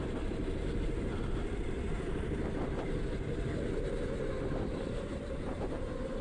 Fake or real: real